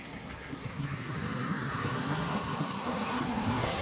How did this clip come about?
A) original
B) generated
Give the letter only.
B